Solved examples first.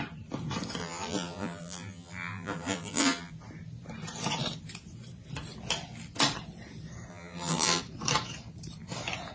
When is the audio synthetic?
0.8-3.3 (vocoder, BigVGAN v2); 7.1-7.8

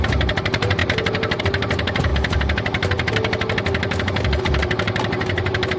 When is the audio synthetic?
0.0-2.1 (vocoder, BigVGAN v2); 4.4-5.8

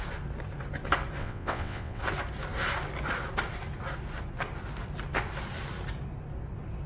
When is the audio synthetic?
1.2-2.0 (vocoder, WaveNeXt)

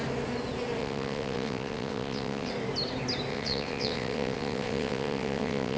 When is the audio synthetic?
0.8-2.5 (vocoder, WaveNeXt); 3.3-5.8